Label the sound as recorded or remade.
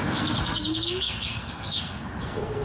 remade